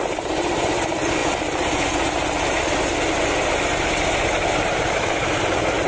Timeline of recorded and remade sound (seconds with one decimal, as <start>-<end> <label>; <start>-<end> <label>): 0.0-3.7 recorded; 3.7-5.9 remade

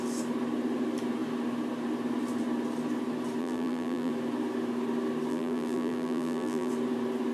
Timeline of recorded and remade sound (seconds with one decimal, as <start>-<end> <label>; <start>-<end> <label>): 0.0-3.4 recorded; 3.4-4.1 remade; 4.1-5.3 recorded; 5.3-6.7 remade; 6.7-7.3 recorded

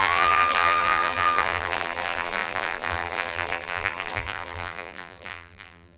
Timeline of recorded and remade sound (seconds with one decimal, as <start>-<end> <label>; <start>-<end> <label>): 0.0-6.0 remade

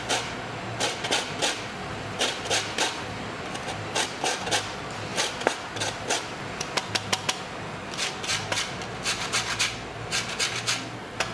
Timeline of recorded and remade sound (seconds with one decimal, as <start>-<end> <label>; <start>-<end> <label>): 0.0-1.4 recorded; 1.4-4.4 remade; 4.4-11.3 recorded

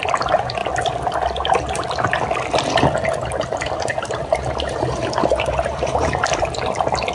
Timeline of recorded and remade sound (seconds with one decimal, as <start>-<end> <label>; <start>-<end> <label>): 0.0-3.9 recorded; 3.9-4.7 remade; 4.7-7.1 recorded

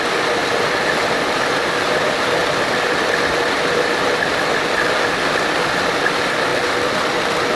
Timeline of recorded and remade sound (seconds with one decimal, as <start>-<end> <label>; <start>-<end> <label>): 0.0-0.4 recorded; 0.4-1.4 remade; 1.4-2.4 recorded; 2.4-5.3 remade; 5.3-6.5 recorded; 6.5-7.0 remade; 7.0-7.6 recorded

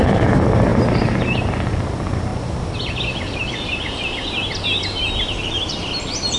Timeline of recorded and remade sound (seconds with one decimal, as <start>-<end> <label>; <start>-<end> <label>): 0.0-2.3 remade; 2.3-6.0 recorded; 6.0-6.4 remade

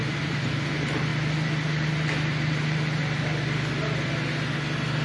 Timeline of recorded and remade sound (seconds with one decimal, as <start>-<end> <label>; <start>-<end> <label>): 0.0-0.5 remade; 0.5-5.0 recorded